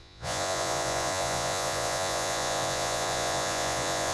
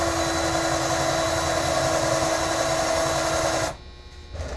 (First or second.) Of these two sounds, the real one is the second